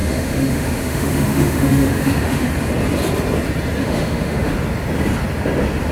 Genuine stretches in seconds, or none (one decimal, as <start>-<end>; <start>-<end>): 2.5-3.8; 4.5-5.9